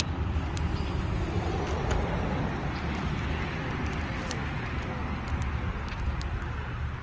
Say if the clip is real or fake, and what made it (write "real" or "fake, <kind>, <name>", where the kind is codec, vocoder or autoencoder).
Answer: real